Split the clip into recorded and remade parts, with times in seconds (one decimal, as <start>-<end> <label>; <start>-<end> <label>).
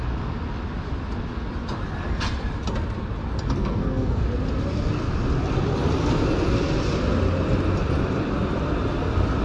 0.0-3.6 recorded; 3.6-4.2 remade; 4.2-9.4 recorded